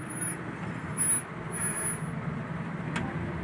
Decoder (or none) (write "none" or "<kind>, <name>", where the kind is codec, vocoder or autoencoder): none